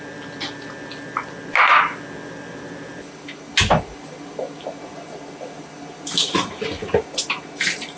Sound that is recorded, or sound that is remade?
recorded